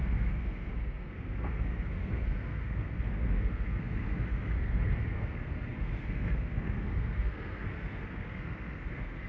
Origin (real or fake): fake